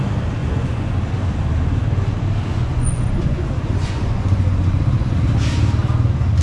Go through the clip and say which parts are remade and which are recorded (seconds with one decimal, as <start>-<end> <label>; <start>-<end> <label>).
0.0-0.4 recorded; 0.4-1.0 remade; 1.0-2.5 recorded; 2.5-5.2 remade; 5.2-6.4 recorded